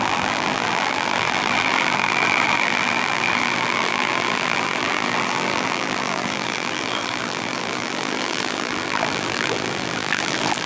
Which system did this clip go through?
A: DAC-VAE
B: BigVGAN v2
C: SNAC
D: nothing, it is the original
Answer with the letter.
B